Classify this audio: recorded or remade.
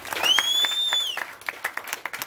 recorded